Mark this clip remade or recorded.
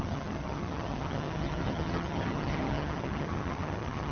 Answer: remade